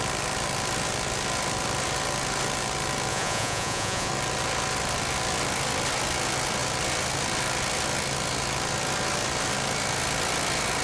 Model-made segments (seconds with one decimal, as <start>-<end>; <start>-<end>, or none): 3.1-4.1